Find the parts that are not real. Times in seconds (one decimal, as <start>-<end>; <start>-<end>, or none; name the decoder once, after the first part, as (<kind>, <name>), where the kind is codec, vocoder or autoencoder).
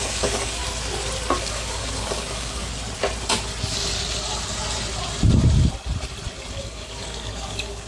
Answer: 0.0-0.6 (codec, DAC); 1.4-2.7; 6.5-7.9